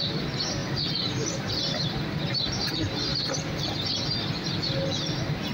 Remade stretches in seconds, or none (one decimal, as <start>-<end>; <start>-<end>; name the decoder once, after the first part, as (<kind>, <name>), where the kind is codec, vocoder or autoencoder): 0.6-2.2 (vocoder, BigVGAN v2); 3.1-3.9